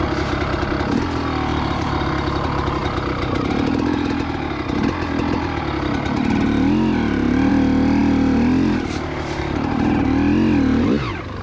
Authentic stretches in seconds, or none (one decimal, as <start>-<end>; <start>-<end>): 0.0-1.5; 2.1-11.4